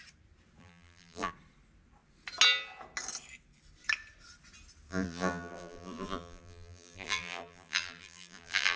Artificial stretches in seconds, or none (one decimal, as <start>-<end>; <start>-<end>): 0.6-1.3; 4.9-8.8

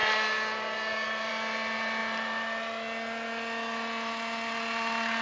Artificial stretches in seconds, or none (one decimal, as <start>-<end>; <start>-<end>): none

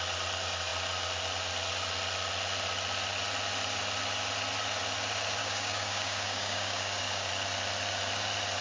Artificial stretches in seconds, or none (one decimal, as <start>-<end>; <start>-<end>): 5.4-7.3

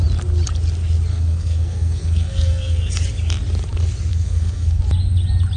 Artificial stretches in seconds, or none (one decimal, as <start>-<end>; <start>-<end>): 1.1-2.9; 4.1-4.8

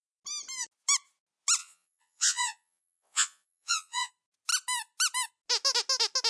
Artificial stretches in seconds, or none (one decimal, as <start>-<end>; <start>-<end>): 1.6-4.1

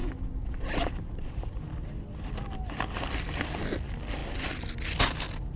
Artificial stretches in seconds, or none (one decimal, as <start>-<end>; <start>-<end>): 4.2-5.6

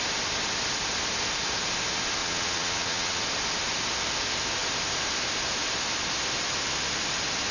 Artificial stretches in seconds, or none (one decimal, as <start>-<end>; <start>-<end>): 2.2-3.2